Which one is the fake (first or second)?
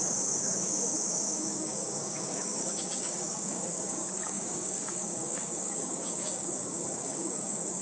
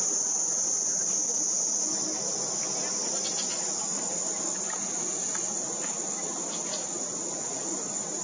first